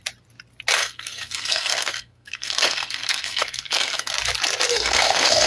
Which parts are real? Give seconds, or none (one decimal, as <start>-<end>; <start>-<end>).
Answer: 0.0-0.8; 4.1-4.7

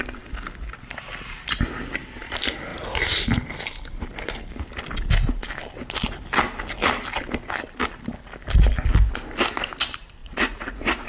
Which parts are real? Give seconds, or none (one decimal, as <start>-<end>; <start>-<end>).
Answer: 0.0-10.2

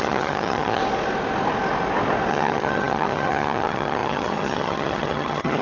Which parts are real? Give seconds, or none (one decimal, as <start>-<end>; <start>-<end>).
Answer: 0.8-2.3

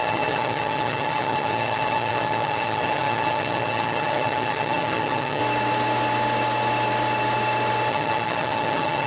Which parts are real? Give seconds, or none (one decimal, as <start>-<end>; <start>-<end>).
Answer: 5.4-7.9

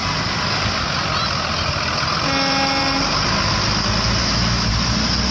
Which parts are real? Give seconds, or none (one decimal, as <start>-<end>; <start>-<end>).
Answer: 0.0-4.2; 4.7-5.3